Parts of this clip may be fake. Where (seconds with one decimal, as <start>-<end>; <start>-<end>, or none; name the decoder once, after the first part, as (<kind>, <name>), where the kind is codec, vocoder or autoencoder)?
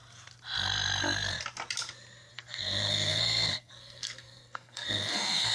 2.3-5.5 (codec, SNAC)